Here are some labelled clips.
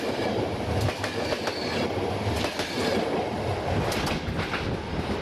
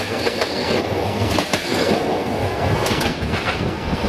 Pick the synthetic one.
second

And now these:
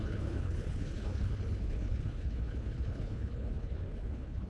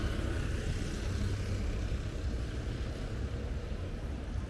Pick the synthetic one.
first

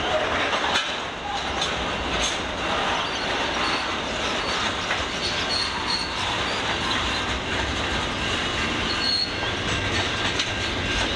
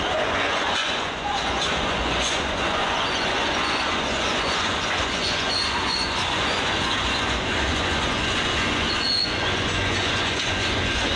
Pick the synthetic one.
second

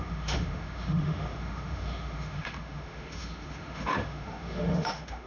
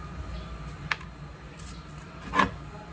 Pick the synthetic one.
first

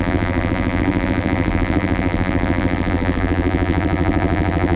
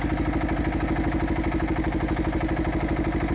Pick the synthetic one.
first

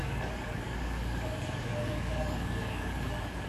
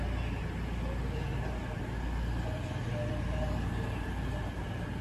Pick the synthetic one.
first